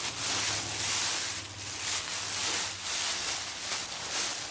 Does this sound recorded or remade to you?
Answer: recorded